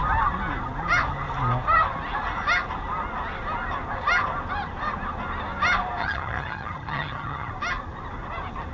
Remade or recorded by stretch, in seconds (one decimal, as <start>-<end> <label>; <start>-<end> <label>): 0.0-6.0 recorded; 6.0-7.5 remade; 7.5-8.7 recorded